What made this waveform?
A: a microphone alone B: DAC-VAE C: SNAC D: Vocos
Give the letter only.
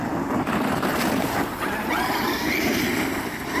A